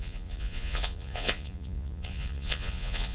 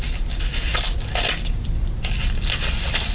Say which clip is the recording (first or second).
second